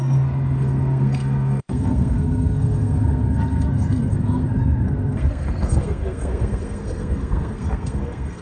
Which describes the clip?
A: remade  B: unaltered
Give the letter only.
A